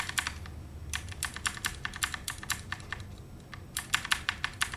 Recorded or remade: recorded